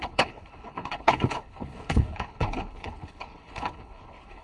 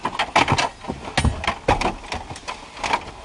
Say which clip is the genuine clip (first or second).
second